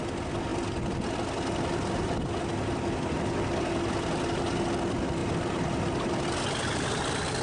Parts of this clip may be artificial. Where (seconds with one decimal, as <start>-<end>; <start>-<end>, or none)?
none